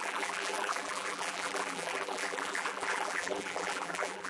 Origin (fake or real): fake